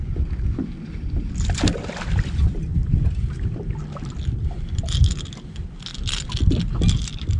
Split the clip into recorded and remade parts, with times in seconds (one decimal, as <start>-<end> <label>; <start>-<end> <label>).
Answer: 0.0-5.9 remade; 5.9-6.5 recorded; 6.5-7.4 remade